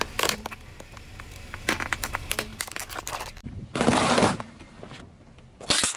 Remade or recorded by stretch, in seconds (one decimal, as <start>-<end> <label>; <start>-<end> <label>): 0.0-2.5 recorded; 2.5-3.0 remade; 3.0-3.4 recorded; 3.4-4.8 remade; 4.8-6.0 recorded